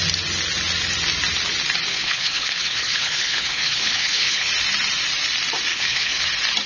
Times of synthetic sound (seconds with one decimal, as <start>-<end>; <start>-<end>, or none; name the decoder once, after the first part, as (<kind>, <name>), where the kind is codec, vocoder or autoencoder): 1.9-4.5 (codec, HILCodec); 5.7-6.2